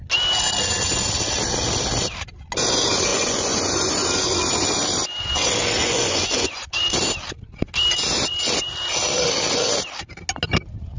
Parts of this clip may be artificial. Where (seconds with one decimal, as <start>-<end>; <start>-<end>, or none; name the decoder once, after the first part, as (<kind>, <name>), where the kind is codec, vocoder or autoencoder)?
3.1-3.9 (vocoder, Vocos); 5.8-6.7